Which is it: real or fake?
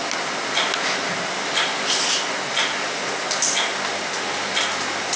real